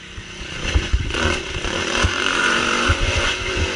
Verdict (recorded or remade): remade